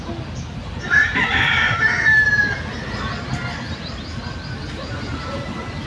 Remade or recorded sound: recorded